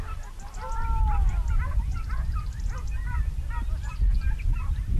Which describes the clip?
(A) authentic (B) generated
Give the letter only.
A